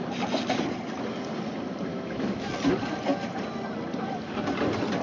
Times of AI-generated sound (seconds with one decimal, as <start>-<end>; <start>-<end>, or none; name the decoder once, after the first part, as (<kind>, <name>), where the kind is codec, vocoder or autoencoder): 1.9-2.5 (autoencoder, DAC-VAE)